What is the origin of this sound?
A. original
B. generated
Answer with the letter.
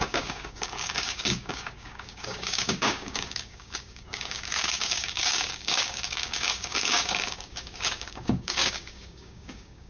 B